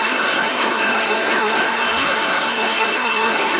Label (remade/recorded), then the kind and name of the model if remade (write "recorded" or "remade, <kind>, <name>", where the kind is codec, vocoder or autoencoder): remade, codec, SNAC